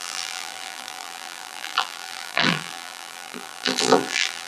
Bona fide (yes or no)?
no